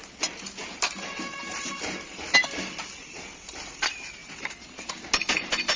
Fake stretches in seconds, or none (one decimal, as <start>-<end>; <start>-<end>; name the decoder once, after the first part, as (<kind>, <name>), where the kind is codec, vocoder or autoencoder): none

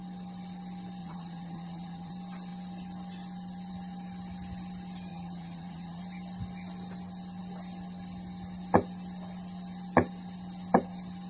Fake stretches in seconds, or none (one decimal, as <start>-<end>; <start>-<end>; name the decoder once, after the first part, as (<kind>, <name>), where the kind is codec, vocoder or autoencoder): 1.0-2.1 (vocoder, Vocos); 5.1-6.0

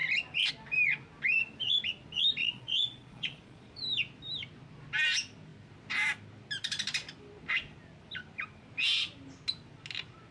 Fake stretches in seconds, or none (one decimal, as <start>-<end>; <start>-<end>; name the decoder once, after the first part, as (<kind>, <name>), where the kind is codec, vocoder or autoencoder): 2.4-3.7 (vocoder, Vocos)

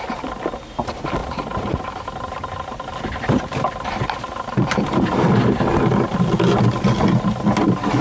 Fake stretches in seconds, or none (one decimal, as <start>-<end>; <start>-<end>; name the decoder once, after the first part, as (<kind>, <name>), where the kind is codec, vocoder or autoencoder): 1.2-1.8 (vocoder, Vocos)

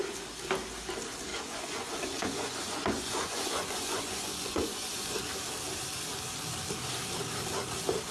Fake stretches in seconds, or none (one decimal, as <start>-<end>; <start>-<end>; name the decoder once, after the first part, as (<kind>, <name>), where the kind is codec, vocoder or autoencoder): 1.3-5.2 (vocoder, Vocos)

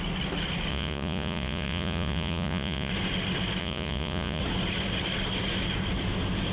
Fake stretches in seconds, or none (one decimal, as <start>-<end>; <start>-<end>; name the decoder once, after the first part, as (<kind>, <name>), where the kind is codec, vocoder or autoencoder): 0.7-2.9 (vocoder, Vocos); 3.6-4.4

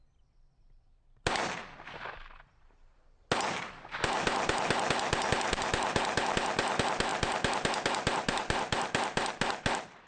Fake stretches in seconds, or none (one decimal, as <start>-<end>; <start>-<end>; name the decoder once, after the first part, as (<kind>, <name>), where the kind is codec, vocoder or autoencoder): none

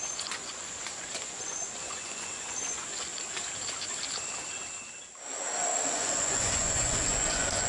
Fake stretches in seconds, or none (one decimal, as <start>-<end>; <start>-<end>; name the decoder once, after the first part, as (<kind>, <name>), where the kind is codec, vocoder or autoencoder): 0.0-3.1 (vocoder, Vocos); 5.9-7.7